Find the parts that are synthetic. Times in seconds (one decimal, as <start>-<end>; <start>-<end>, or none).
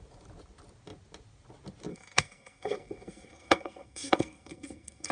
1.9-5.1